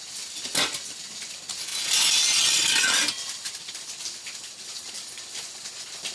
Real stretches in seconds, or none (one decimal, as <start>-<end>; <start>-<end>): 0.0-6.1